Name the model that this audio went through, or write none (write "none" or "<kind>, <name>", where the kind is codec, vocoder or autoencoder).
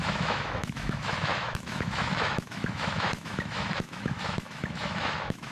autoencoder, DAC-VAE